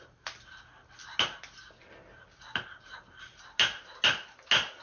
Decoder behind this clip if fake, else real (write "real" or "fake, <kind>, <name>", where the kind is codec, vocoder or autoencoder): real